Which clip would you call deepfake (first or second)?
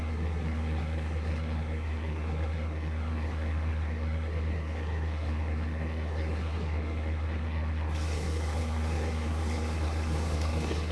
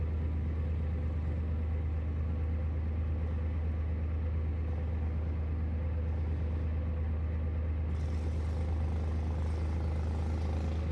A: first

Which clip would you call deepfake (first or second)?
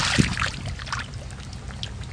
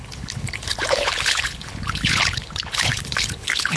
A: second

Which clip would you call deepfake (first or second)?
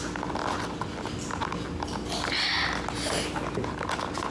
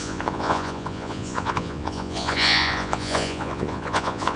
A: second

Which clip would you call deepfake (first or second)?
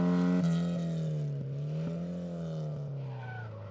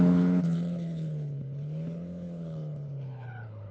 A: second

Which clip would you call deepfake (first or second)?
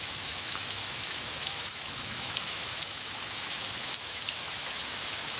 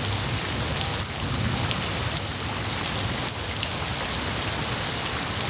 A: first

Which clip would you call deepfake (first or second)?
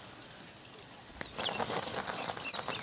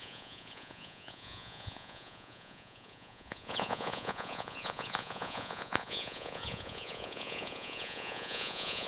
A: second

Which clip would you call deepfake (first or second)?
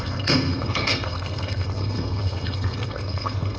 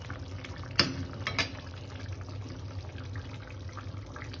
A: first